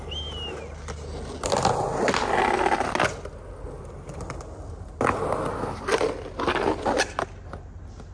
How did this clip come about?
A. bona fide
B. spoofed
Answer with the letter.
A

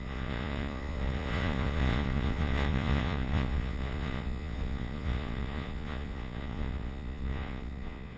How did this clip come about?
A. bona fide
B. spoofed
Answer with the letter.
B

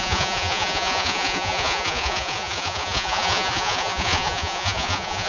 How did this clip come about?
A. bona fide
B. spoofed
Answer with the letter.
B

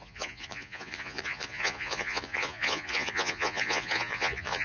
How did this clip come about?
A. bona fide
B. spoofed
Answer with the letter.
B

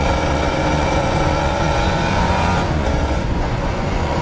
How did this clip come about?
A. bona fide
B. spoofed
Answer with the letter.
B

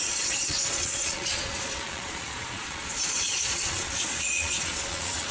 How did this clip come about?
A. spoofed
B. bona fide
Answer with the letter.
A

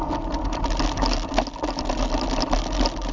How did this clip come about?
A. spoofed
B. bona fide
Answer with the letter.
B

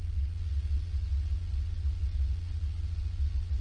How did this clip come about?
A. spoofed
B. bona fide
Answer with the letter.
A